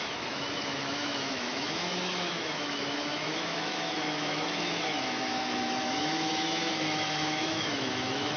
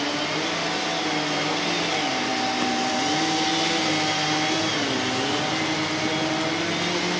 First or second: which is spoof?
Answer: first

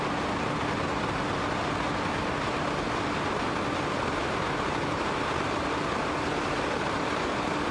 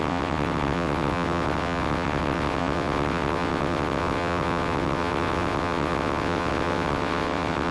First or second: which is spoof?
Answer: second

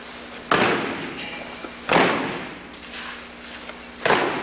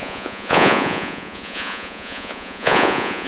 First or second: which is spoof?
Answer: second